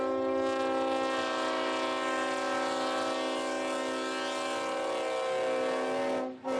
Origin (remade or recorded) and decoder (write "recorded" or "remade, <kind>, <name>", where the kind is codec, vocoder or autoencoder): recorded